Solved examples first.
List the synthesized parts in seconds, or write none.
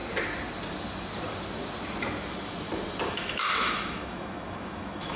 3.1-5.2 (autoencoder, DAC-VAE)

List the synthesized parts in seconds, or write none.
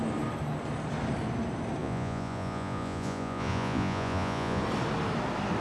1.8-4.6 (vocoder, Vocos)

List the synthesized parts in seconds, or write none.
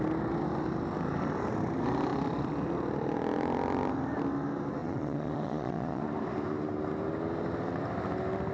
4.8-6.0 (vocoder, Vocos)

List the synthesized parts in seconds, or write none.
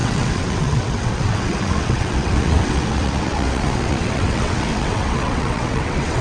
0.0-6.2 (vocoder, WaveNeXt)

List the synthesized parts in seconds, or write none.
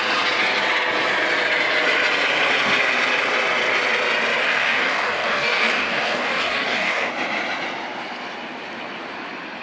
4.4-7.1 (codec, DAC)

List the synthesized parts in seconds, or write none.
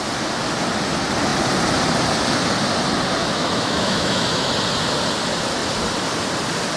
3.2-4.5 (autoencoder, DAC-VAE)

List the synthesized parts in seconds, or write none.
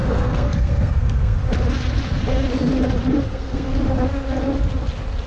0.0-1.4 (codec, SNAC); 3.2-3.7